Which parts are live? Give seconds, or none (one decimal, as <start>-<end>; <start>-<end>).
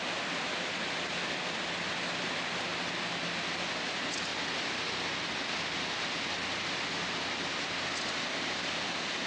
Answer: 0.0-9.3